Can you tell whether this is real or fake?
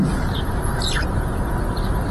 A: real